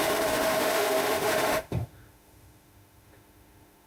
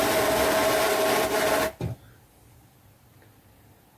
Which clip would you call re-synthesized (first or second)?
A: first